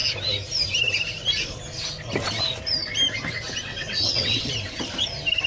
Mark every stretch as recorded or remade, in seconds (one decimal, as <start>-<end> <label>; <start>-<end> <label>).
0.0-3.7 recorded; 3.7-4.5 remade; 4.5-5.5 recorded